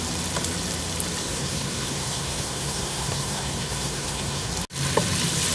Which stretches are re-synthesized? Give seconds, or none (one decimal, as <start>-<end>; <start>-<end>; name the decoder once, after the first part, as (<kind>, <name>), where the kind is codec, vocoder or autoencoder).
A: 1.2-4.5 (codec, SNAC)